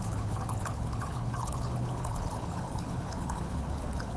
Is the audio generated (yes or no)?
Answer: yes